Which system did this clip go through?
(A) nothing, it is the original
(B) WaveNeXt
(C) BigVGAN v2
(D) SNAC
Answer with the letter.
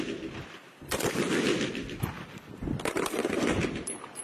C